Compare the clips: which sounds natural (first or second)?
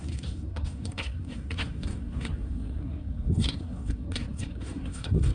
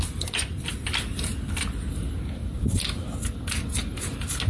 second